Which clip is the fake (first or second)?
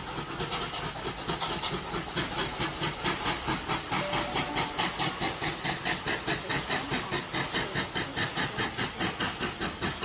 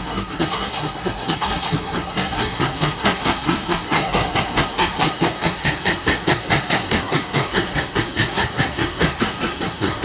second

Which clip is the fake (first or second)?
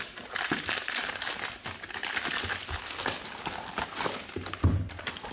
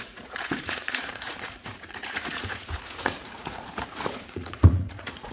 second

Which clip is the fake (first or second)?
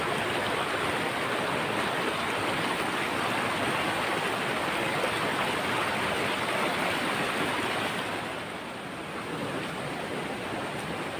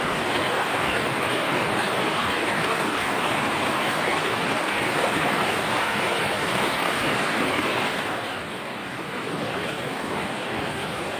second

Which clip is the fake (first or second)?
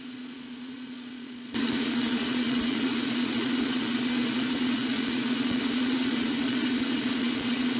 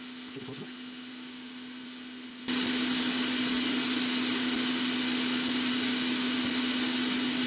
first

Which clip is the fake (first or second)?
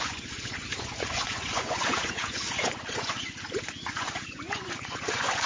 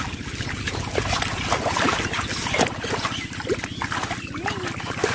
first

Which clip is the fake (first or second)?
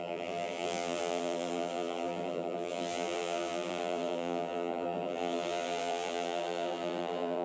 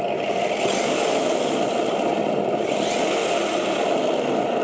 first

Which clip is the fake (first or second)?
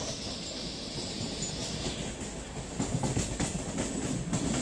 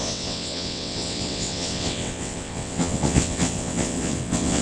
second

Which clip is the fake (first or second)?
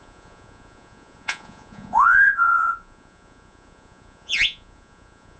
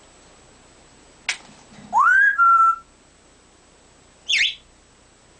first